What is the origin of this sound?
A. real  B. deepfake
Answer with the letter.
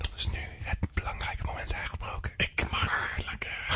A